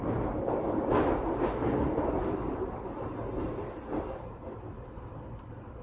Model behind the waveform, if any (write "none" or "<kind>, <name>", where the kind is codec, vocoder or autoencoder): none